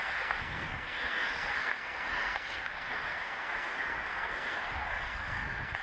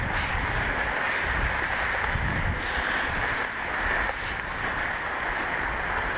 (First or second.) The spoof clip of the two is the first